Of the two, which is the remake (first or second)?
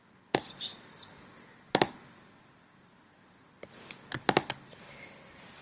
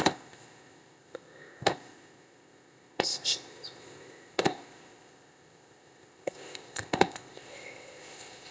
second